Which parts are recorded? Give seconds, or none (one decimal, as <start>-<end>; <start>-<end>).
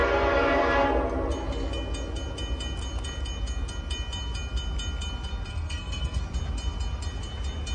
0.0-5.5; 6.2-7.7